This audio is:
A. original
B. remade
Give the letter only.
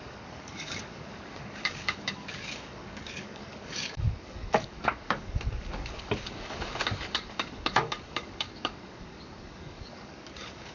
B